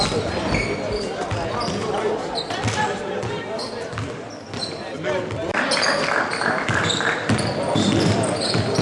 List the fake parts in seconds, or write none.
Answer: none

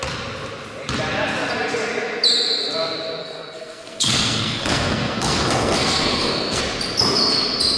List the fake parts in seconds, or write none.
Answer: 3.2-6.6 (codec, SNAC)

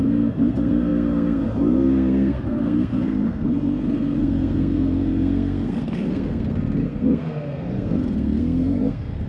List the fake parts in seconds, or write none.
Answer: 0.0-9.3 (codec, SNAC)

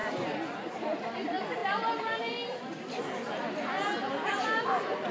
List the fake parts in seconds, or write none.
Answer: none

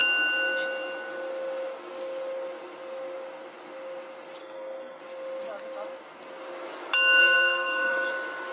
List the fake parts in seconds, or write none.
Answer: 4.4-5.0 (codec, SNAC); 7.2-8.1

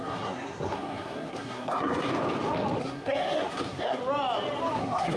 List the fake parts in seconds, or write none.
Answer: 0.0-2.1 (codec, SNAC); 2.8-4.0; 4.8-5.2

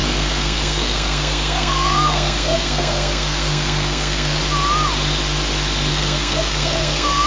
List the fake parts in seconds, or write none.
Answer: 0.0-4.4 (codec, SNAC); 5.9-7.3